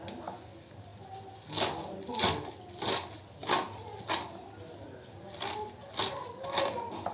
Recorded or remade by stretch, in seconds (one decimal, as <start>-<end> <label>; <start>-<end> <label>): 0.0-7.1 recorded